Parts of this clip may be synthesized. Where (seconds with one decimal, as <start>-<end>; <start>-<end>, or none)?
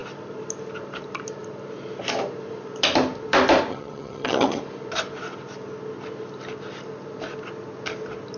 3.7-4.6